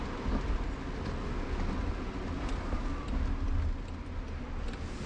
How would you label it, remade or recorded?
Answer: recorded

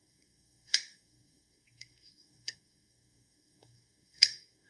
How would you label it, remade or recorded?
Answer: remade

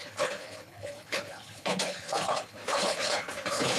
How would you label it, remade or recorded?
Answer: remade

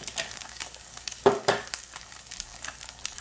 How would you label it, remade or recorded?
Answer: remade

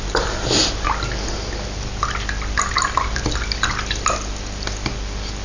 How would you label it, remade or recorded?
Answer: recorded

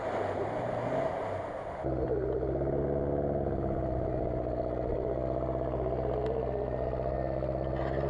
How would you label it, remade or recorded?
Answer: recorded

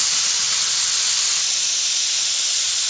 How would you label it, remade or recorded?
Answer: recorded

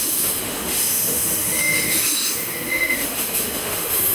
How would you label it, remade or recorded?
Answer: remade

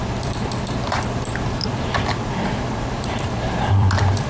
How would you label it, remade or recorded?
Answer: remade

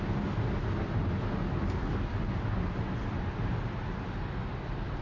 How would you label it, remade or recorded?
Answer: recorded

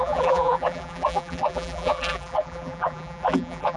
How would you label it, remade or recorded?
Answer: remade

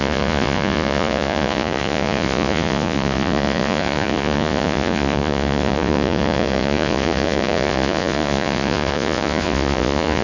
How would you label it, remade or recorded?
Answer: remade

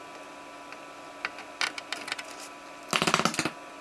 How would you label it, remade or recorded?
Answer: recorded